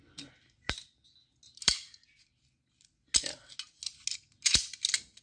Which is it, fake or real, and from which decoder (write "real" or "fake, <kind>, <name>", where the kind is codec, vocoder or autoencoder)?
real